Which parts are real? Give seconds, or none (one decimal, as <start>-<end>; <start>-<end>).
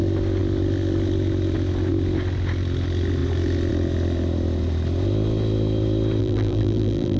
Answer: 0.0-6.2